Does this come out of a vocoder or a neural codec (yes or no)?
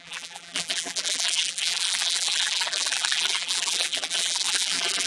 yes